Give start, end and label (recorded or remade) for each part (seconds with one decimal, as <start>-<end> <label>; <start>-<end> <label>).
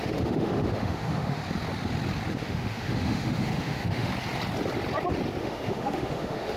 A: 0.0-1.4 remade; 1.4-2.3 recorded; 2.3-4.1 remade; 4.1-5.4 recorded; 5.4-6.6 remade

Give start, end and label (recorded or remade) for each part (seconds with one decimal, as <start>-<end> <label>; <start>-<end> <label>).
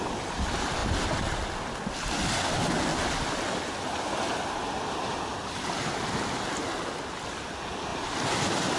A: 0.0-8.8 recorded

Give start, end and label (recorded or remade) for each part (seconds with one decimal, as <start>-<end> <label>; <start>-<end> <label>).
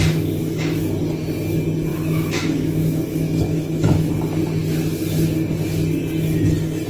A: 0.0-0.4 recorded; 0.4-1.0 remade; 1.0-1.9 recorded; 1.9-4.1 remade; 4.1-6.9 recorded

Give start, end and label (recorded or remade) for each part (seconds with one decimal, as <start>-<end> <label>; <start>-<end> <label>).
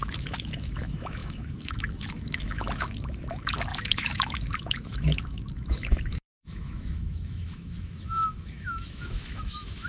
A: 0.0-9.9 remade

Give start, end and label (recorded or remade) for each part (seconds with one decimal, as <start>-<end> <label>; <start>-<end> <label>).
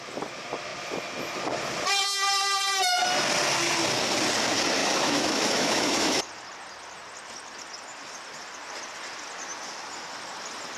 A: 0.0-4.8 recorded; 4.8-6.2 remade; 6.2-10.8 recorded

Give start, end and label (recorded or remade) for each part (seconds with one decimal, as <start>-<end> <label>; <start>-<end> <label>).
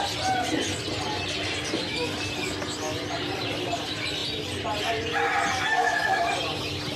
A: 0.0-5.7 recorded; 5.7-6.3 remade; 6.3-7.0 recorded